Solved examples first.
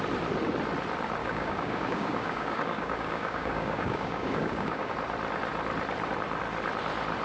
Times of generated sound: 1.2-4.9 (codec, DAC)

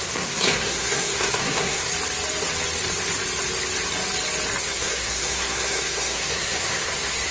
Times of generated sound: 0.0-1.9 (codec, SNAC); 4.6-7.3

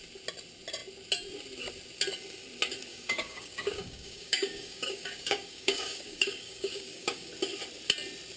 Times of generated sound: 2.9-7.3 (codec, DAC)

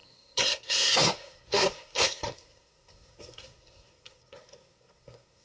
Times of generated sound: 0.0-5.4 (codec, SNAC)

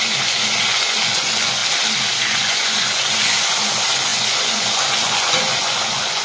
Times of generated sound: 0.0-1.6 (vocoder, Vocos); 2.1-6.2

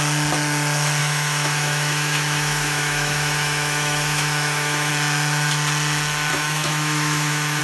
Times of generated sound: 1.0-4.9 (autoencoder, DAC-VAE); 6.3-7.6